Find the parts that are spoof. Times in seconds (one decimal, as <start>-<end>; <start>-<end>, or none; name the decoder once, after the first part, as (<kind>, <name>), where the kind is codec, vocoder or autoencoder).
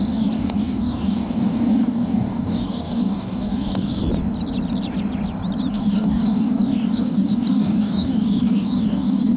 0.0-4.0 (codec, DAC); 5.7-9.4